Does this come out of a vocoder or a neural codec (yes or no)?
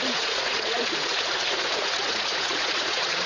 yes